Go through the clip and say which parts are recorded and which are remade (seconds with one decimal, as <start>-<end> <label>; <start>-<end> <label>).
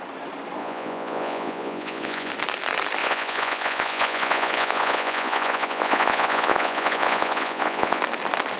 0.0-0.6 recorded; 0.6-2.3 remade; 2.3-3.0 recorded; 3.0-8.0 remade; 8.0-8.6 recorded